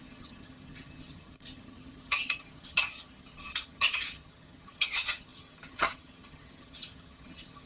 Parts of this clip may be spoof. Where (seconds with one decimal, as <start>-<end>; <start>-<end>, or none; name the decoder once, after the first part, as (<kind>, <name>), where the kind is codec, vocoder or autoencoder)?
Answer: 0.0-7.7 (vocoder, HiFi-GAN)